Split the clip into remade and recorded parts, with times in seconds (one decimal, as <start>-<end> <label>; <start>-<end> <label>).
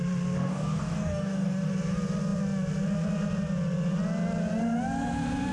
0.0-0.4 recorded; 0.4-1.7 remade; 1.7-5.5 recorded